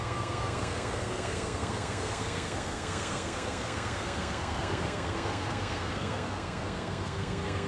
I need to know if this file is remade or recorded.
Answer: remade